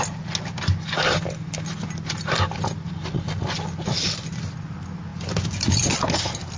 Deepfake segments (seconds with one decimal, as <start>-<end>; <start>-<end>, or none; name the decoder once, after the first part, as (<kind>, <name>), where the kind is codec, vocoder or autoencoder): none